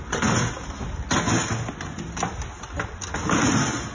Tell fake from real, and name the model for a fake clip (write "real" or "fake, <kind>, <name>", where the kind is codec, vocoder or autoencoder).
real